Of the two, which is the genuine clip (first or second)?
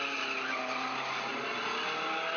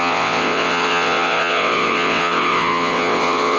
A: first